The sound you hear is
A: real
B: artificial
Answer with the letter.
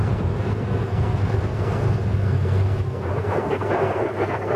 B